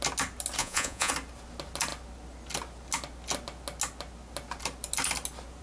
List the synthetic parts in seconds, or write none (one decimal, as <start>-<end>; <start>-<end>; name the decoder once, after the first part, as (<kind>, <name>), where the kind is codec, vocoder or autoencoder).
0.6-1.1 (vocoder, Vocos)